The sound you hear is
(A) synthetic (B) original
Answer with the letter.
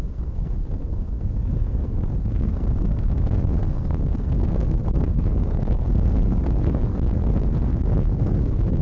A